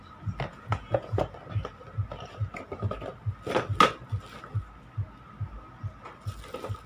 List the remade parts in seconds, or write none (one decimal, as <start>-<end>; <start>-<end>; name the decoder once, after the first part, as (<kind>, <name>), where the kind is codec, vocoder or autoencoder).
0.5-1.2 (vocoder, Vocos)